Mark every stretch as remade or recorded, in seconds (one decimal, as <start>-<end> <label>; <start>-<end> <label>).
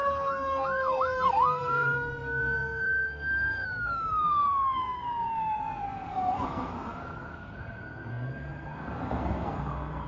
0.0-10.1 remade